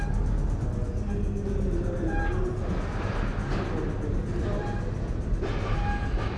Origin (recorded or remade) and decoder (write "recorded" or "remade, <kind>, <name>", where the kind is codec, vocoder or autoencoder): recorded